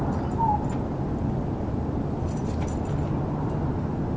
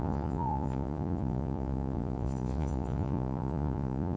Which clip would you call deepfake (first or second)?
second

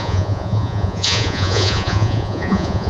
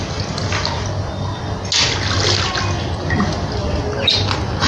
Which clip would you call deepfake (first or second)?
first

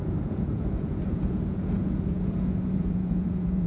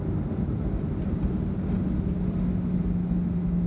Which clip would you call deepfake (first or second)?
first